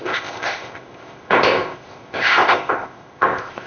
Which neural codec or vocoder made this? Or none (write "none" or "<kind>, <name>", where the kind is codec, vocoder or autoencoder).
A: codec, ZipCodec